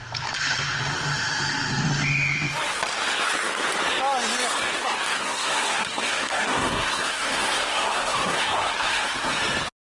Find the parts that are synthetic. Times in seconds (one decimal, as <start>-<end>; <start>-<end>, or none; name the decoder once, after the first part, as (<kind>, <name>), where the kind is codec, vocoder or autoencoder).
5.2-9.4 (codec, SNAC)

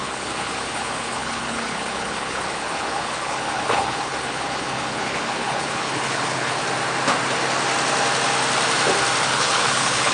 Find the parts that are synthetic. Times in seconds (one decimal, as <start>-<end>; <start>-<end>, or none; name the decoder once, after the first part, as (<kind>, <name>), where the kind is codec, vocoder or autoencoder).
0.0-6.6 (codec, HILCodec); 9.2-10.1

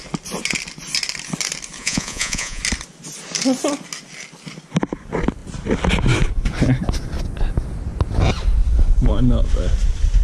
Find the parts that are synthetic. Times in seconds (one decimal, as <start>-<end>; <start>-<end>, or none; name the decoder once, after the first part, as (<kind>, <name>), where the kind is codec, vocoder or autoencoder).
1.8-2.6 (vocoder, Vocos)

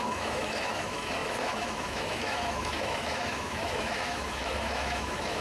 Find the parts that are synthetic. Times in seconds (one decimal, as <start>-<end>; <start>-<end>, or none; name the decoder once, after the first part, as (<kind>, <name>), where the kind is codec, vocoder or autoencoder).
0.0-5.4 (autoencoder, DAC-VAE)

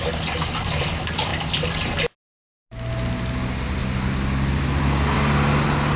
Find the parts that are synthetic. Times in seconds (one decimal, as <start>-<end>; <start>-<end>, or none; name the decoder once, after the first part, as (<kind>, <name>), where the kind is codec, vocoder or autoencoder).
none

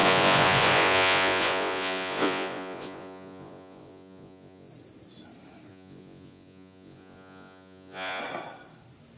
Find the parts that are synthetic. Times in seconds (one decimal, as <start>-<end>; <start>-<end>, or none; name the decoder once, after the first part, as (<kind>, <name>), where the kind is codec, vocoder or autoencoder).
0.0-4.7 (vocoder, Vocos); 5.7-8.2